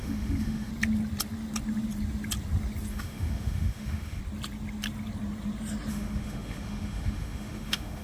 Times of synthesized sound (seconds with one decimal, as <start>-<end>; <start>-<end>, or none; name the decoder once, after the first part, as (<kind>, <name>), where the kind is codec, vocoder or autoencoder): 0.0-0.7 (autoencoder, DAC-VAE); 2.9-4.2; 5.9-8.0